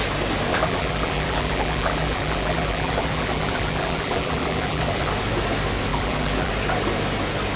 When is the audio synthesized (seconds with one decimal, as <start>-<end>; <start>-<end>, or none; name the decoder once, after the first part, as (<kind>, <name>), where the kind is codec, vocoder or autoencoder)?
0.5-5.1 (vocoder, BigVGAN v2); 5.9-6.5